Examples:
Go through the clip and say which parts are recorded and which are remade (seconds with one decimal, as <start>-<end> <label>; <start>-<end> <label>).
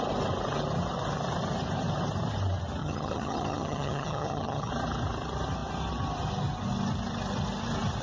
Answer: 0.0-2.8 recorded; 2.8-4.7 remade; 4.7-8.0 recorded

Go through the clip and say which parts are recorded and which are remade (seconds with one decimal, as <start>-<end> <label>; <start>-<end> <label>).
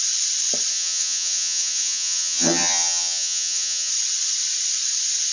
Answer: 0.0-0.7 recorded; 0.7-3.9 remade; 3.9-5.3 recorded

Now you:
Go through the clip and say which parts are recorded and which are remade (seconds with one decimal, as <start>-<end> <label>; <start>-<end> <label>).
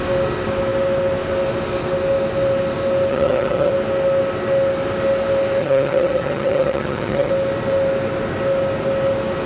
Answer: 0.0-3.1 recorded; 3.1-3.7 remade; 3.7-5.6 recorded; 5.6-7.3 remade; 7.3-9.5 recorded